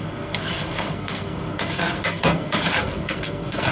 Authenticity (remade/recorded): remade